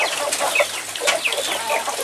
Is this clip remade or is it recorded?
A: recorded